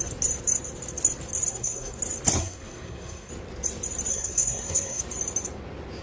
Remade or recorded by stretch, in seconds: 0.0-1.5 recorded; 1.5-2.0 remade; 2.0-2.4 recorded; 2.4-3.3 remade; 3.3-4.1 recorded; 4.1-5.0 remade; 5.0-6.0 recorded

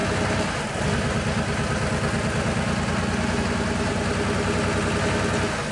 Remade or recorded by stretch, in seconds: 0.0-5.7 recorded